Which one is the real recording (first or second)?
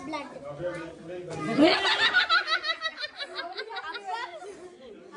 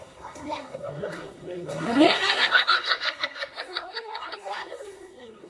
first